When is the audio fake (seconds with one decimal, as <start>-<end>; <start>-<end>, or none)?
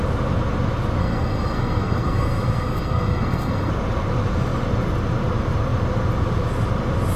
1.0-3.7